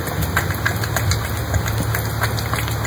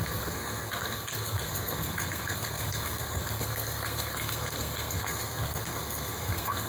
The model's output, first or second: second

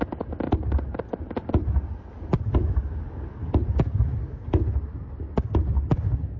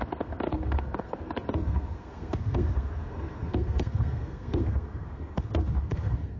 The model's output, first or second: second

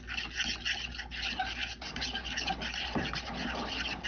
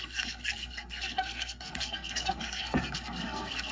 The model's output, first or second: second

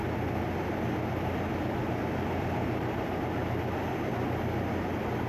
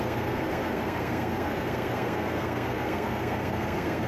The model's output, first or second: second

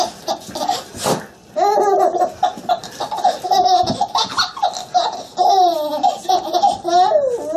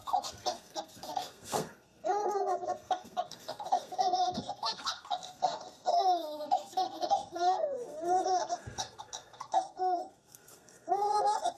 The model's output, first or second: second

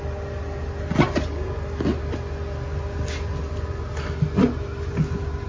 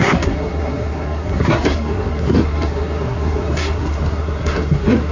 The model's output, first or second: second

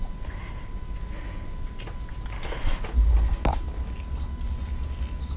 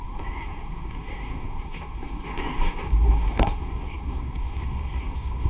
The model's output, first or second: second